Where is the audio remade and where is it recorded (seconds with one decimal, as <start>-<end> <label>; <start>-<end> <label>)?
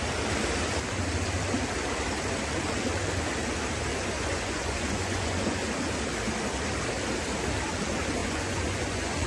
0.0-3.9 recorded; 3.9-5.7 remade; 5.7-8.2 recorded; 8.2-9.3 remade